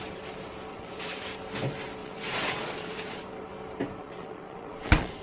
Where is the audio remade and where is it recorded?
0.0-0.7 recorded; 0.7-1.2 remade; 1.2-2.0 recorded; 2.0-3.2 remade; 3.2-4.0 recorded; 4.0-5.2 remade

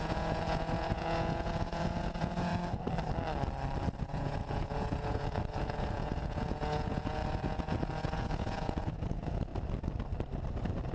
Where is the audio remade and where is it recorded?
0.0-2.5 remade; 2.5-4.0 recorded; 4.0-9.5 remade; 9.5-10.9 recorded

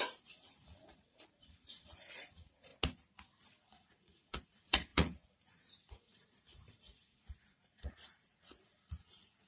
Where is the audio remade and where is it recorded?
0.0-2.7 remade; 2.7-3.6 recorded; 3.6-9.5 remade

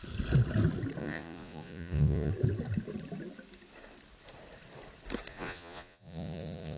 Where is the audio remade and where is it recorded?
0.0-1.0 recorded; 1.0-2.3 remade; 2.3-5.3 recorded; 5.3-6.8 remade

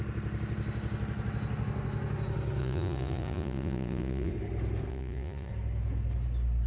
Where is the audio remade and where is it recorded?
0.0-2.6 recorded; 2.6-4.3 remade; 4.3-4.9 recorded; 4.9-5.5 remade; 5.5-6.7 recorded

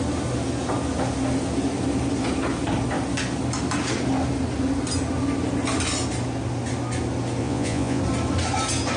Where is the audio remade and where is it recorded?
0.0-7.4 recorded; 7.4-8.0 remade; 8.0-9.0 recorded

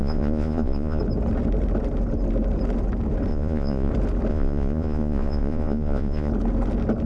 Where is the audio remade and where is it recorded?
0.0-1.0 remade; 1.0-3.3 recorded; 3.3-3.9 remade; 3.9-4.3 recorded; 4.3-6.3 remade; 6.3-7.1 recorded

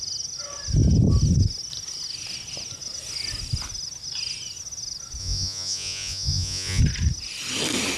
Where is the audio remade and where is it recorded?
0.0-5.2 recorded; 5.2-6.8 remade; 6.8-8.0 recorded